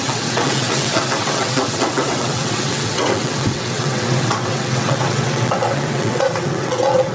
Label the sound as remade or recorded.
remade